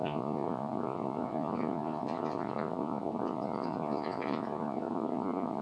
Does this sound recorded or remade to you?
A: remade